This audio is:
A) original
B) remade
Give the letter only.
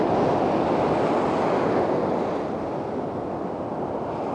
A